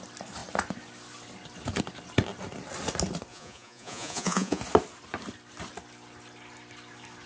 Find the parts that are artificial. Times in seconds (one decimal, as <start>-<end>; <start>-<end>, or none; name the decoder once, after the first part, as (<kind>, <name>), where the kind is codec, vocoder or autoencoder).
3.3-4.6 (vocoder, Vocos)